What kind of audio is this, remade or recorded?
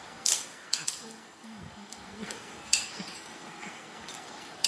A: remade